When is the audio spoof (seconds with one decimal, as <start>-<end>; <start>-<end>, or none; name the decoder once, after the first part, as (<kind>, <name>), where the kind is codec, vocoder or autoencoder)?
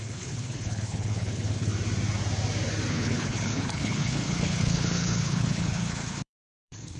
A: 0.0-1.7 (codec, HILCodec); 2.9-7.0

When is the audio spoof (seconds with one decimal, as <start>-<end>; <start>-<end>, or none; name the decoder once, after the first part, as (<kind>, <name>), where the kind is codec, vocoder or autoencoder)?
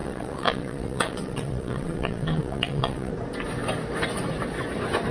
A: 0.0-3.1 (vocoder, WaveNeXt)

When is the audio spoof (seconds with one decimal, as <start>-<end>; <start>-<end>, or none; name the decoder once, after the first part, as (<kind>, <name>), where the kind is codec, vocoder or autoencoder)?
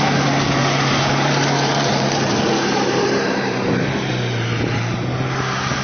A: 0.6-4.1 (vocoder, BigVGAN v2)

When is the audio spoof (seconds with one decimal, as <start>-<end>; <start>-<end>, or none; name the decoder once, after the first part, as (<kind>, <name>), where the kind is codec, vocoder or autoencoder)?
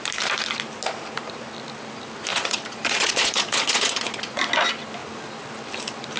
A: 2.3-4.4 (vocoder, Vocos)